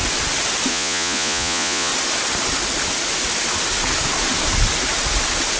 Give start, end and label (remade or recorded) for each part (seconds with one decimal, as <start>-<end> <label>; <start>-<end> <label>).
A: 0.0-0.7 recorded; 0.7-1.9 remade; 1.9-5.6 recorded